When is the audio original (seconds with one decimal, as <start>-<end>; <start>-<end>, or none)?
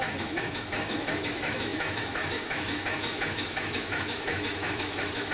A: none